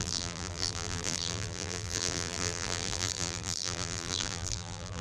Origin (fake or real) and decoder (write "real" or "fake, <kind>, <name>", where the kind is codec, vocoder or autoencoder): fake, vocoder, BigVGAN v2